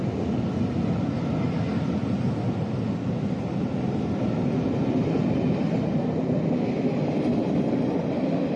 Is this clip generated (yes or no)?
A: no